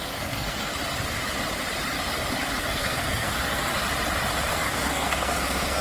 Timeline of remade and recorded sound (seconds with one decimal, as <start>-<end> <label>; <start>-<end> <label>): 0.0-0.7 remade; 0.7-2.6 recorded; 2.6-3.7 remade; 3.7-4.5 recorded; 4.5-5.8 remade